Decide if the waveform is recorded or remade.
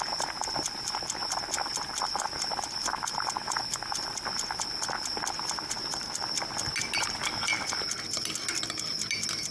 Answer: recorded